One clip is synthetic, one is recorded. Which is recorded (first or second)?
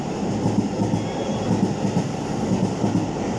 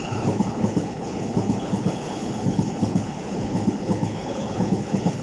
first